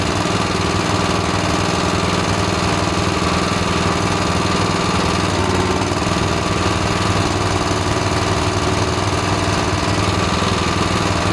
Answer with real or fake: real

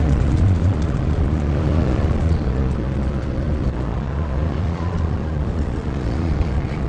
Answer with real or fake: fake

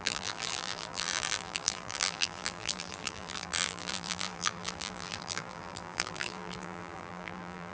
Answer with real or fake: fake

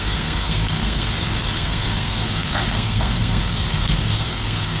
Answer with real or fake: fake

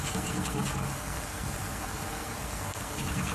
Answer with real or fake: fake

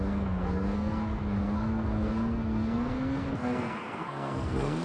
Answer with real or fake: fake